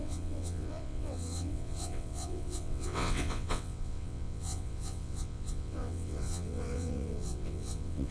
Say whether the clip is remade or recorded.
remade